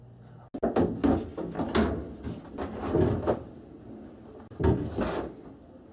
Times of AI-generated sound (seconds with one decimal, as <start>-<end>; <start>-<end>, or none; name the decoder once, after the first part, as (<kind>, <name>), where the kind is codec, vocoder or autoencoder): none